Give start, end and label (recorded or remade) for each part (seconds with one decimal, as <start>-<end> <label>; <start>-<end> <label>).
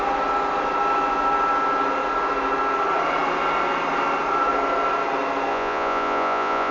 0.0-5.5 recorded; 5.5-6.7 remade